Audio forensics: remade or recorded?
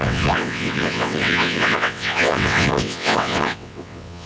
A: remade